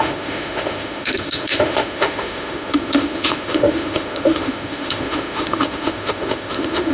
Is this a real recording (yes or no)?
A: no